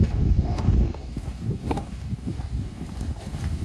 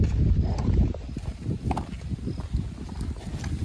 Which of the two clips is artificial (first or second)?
first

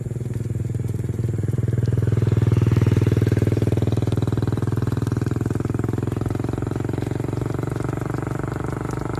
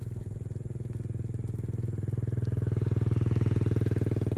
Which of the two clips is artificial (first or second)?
first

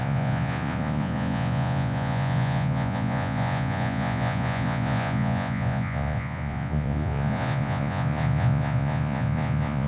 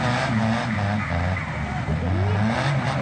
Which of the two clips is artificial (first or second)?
first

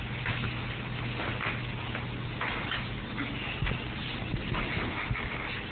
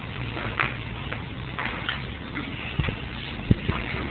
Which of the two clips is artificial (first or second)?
second